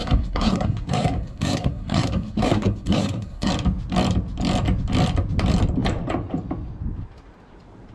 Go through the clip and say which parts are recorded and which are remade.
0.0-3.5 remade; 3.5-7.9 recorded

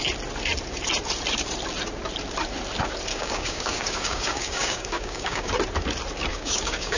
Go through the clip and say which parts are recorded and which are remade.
0.0-3.1 recorded; 3.1-5.5 remade; 5.5-6.3 recorded; 6.3-7.0 remade

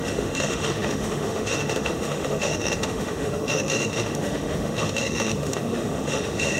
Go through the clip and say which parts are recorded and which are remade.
0.0-6.6 remade

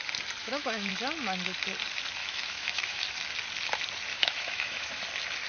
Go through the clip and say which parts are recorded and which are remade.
0.0-0.4 recorded; 0.4-0.9 remade; 0.9-2.2 recorded; 2.2-3.0 remade; 3.0-4.1 recorded; 4.1-5.0 remade; 5.0-5.5 recorded

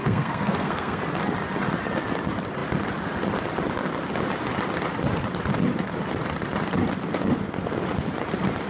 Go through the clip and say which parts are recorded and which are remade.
0.0-1.0 remade; 1.0-8.7 recorded

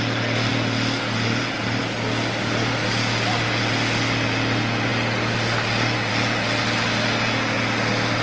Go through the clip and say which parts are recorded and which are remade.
0.0-8.2 recorded

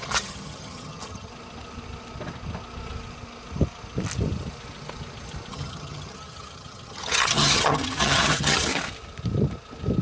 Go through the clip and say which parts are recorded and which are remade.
0.0-1.3 remade; 1.3-5.5 recorded; 5.5-8.7 remade; 8.7-10.0 recorded

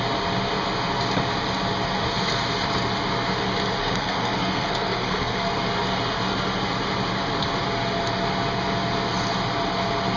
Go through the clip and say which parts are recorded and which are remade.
0.0-3.8 recorded; 3.8-5.5 remade; 5.5-10.2 recorded